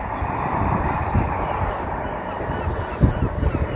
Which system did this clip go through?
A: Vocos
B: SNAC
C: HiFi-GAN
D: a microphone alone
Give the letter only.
D